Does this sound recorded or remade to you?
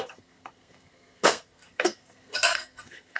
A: remade